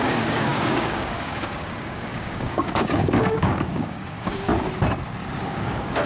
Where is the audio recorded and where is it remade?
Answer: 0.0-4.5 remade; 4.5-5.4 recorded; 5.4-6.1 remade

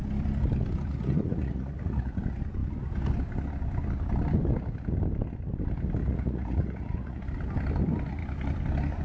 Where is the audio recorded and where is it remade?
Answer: 0.0-0.9 recorded; 0.9-2.2 remade; 2.2-6.0 recorded; 6.0-7.2 remade; 7.2-9.0 recorded

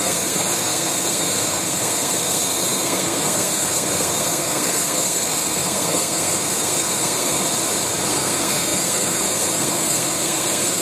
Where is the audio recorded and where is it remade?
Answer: 0.0-7.4 remade; 7.4-8.1 recorded; 8.1-10.8 remade

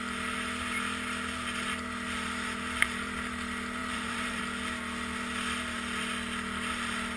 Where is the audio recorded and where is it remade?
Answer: 0.0-3.8 recorded; 3.8-4.4 remade; 4.4-7.2 recorded

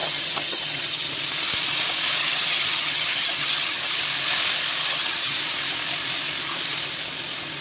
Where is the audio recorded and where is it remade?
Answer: 0.0-1.1 remade; 1.1-2.2 recorded; 2.2-4.0 remade; 4.0-4.8 recorded; 4.8-5.4 remade; 5.4-7.6 recorded